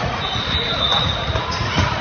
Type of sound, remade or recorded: remade